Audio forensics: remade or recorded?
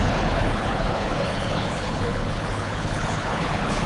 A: remade